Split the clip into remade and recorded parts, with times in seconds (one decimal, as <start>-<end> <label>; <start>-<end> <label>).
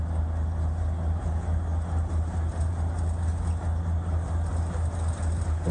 0.0-5.7 recorded